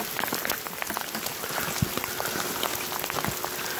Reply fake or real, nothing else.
real